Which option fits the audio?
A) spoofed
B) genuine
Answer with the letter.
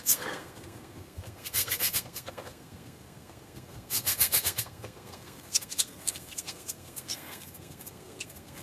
A